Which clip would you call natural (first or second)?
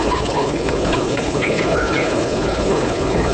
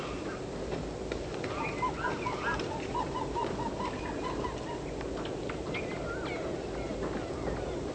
second